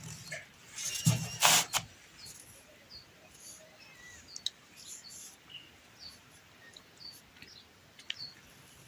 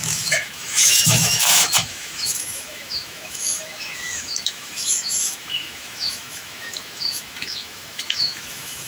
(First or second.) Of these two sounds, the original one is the first